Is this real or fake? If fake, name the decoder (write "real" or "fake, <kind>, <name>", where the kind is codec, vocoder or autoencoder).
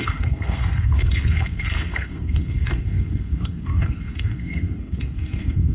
fake, codec, SNAC